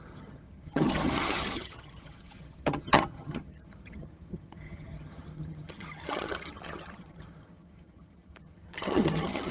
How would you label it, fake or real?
fake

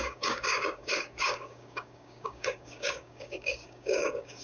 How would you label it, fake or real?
fake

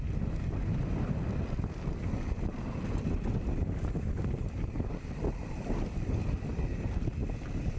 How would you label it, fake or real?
real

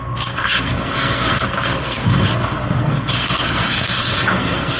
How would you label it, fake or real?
fake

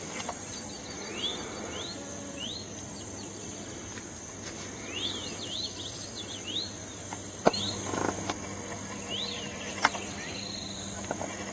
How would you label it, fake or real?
real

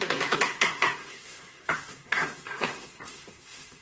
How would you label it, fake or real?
fake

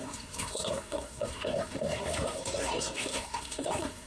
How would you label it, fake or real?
fake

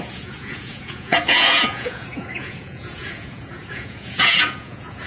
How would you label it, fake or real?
fake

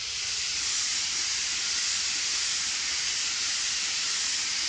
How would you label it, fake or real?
real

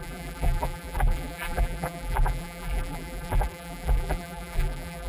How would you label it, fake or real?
fake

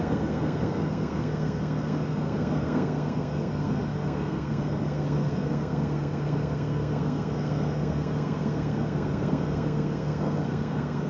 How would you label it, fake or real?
fake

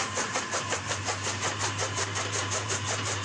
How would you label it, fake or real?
fake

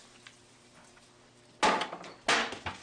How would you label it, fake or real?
real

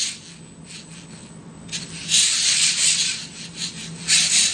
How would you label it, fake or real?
real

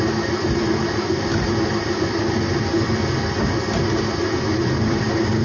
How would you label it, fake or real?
real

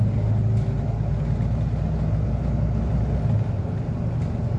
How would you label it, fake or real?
real